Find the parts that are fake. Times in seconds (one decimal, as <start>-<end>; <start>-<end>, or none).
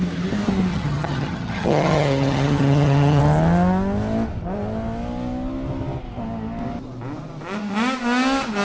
0.7-3.2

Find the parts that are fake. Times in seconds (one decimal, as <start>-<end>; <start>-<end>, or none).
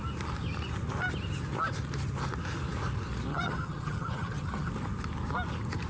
3.3-4.7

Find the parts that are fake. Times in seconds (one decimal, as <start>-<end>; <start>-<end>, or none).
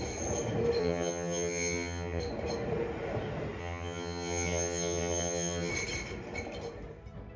0.8-2.2; 3.6-5.7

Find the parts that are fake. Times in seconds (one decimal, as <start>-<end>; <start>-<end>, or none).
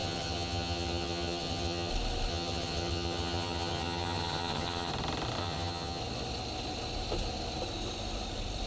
0.0-1.9; 2.3-4.9; 5.4-6.0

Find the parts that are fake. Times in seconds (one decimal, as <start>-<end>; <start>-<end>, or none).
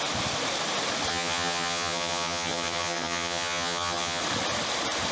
1.1-4.2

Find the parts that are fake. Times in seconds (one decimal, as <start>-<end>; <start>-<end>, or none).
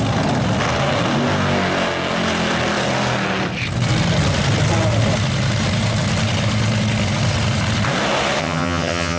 8.4-9.2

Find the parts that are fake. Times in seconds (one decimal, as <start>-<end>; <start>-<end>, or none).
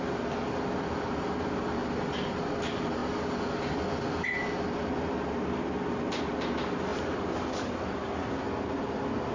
none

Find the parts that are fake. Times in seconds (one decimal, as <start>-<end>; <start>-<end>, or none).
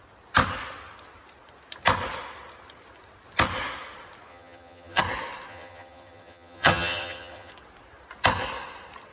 4.3-5.0; 5.5-7.5